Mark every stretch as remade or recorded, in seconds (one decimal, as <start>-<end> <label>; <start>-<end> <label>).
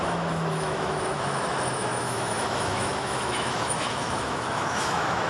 0.0-5.3 remade